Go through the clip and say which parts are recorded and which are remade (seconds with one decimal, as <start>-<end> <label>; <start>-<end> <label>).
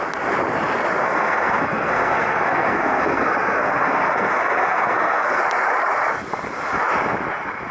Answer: 0.0-1.0 recorded; 1.0-5.4 remade; 5.4-7.7 recorded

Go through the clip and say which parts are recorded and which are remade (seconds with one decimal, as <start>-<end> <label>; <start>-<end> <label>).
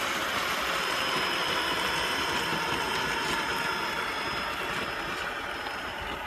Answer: 0.0-6.3 recorded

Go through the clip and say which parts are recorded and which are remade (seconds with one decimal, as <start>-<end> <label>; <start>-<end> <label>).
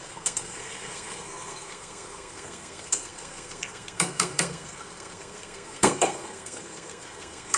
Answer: 0.0-7.6 remade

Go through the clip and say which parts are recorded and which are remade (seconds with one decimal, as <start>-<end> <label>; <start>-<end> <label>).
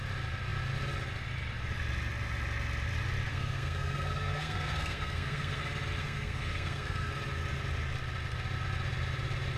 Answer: 0.0-3.3 recorded; 3.3-5.6 remade; 5.6-6.0 recorded; 6.0-7.1 remade; 7.1-9.6 recorded